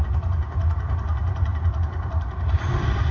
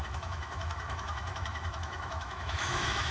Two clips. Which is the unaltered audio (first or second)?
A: first